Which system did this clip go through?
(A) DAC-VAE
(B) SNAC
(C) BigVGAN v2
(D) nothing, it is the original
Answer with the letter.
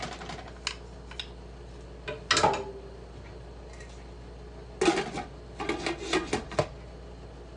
D